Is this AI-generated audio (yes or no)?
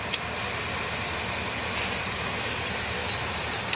no